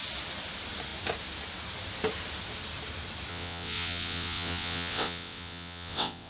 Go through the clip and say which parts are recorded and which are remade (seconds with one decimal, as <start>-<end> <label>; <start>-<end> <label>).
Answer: 0.0-3.3 recorded; 3.3-6.3 remade